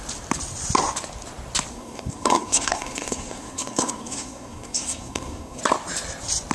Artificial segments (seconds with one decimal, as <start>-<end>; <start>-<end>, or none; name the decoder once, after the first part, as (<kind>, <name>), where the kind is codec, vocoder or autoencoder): 1.7-5.6 (codec, SNAC)